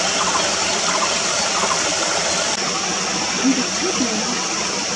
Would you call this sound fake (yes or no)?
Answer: no